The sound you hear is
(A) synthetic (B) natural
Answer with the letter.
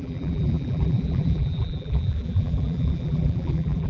A